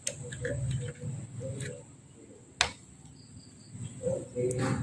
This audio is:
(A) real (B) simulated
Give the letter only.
A